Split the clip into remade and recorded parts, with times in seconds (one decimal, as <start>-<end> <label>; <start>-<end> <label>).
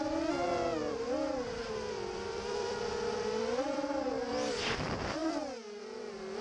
0.0-0.8 recorded; 0.8-4.6 remade; 4.6-6.4 recorded